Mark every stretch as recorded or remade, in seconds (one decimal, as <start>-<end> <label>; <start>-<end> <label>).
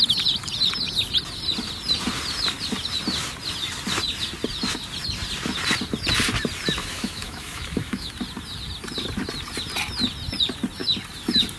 0.0-6.8 recorded; 6.8-8.1 remade; 8.1-11.6 recorded